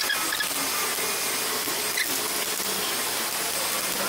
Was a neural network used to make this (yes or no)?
no